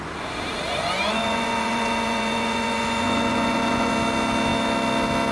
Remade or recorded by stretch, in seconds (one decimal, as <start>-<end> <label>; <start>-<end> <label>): 0.0-0.7 recorded; 0.7-3.9 remade; 3.9-5.3 recorded